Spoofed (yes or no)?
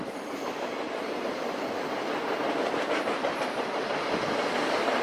no